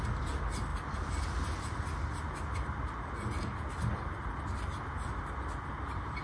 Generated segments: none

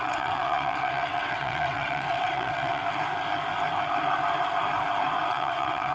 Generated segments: 0.0-2.8 (vocoder, WaveNeXt); 5.3-5.9

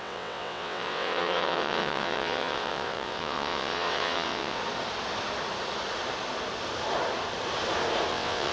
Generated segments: 0.0-4.6 (vocoder, WaveNeXt); 8.1-8.5

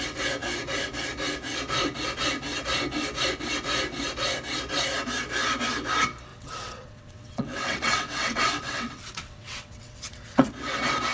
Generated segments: 6.3-10.5 (vocoder, WaveNeXt)

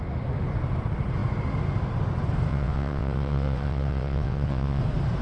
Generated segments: 2.5-4.8 (vocoder, WaveNeXt)